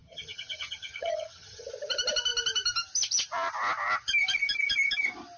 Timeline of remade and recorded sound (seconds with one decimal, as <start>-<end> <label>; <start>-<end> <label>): 0.0-1.7 remade; 1.7-5.4 recorded